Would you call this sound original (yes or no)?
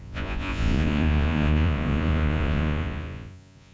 no